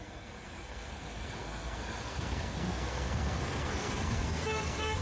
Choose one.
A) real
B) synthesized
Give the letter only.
B